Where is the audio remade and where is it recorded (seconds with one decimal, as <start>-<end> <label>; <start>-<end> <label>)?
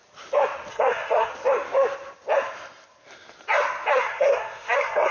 0.0-0.7 recorded; 0.7-1.3 remade; 1.3-3.9 recorded; 3.9-5.1 remade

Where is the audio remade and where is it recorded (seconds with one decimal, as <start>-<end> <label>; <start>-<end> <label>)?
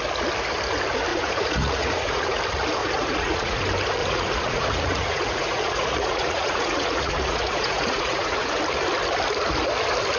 0.0-1.1 recorded; 1.1-2.4 remade; 2.4-2.8 recorded; 2.8-3.6 remade; 3.6-4.0 recorded; 4.0-8.6 remade; 8.6-10.2 recorded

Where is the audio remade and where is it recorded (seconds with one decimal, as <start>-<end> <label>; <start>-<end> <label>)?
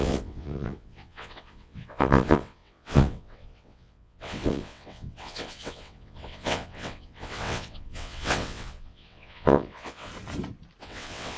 0.0-10.1 remade; 10.1-10.8 recorded; 10.8-11.4 remade